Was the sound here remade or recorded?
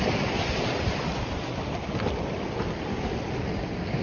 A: recorded